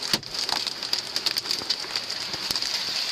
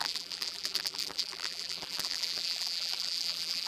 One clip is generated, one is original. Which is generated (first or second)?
second